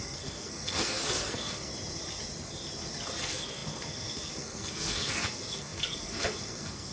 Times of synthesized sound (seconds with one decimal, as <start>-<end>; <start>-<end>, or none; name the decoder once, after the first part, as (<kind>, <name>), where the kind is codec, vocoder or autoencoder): 0.0-1.7 (codec, SNAC); 3.2-6.9